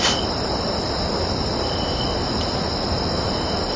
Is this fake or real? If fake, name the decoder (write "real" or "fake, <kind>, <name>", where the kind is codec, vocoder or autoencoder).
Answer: real